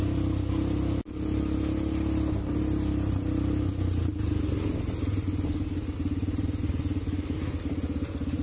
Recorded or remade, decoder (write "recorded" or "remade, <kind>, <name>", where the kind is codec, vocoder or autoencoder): recorded